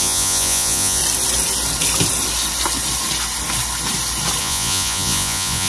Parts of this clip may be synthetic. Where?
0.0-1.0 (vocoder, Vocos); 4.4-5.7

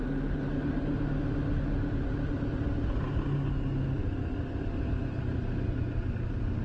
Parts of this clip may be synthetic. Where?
none

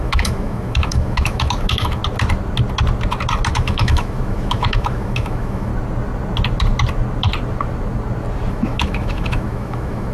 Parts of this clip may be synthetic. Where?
0.0-2.0 (autoencoder, DAC-VAE); 3.5-5.7; 8.5-10.1

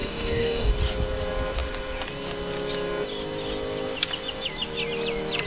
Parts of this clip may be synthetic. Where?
0.0-0.7 (codec, DAC)

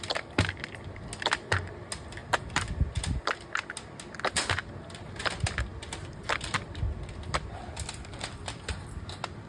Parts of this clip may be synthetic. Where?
2.2-3.7 (vocoder, BigVGAN v2); 5.7-8.7

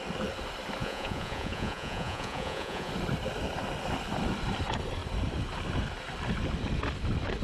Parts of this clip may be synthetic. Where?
0.8-2.9 (vocoder, Vocos)